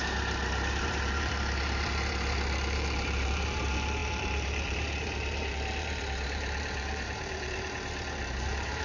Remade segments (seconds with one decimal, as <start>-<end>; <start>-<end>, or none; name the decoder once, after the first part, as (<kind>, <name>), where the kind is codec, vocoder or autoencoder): 0.0-8.8 (vocoder, BigVGAN v2)